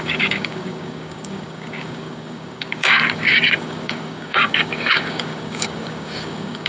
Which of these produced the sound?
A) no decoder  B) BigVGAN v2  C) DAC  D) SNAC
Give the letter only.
C